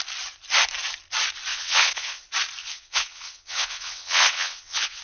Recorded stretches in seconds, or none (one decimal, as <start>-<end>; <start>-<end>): 0.0-1.5; 2.2-2.6